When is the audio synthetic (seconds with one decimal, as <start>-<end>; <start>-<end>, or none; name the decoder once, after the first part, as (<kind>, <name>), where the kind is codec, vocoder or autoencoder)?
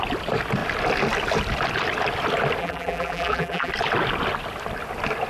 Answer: 2.6-3.7 (vocoder, BigVGAN v2)